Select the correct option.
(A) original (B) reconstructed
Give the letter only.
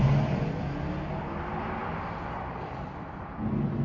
A